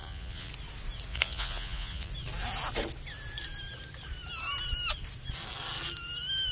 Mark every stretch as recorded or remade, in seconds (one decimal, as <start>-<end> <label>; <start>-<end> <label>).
0.0-0.5 remade; 0.5-1.1 recorded; 1.1-2.1 remade; 2.1-6.5 recorded